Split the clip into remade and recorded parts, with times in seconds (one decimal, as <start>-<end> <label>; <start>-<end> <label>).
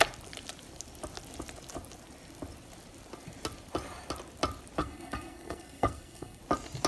0.0-4.8 recorded; 4.8-6.4 remade; 6.4-6.9 recorded